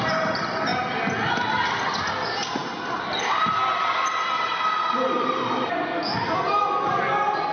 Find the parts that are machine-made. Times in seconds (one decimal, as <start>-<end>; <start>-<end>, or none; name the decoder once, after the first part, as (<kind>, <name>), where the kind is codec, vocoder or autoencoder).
none